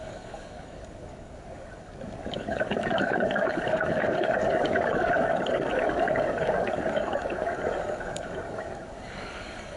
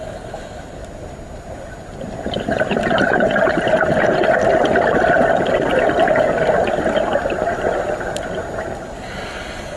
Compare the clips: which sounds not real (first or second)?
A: first